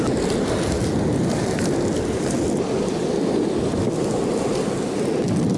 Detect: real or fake real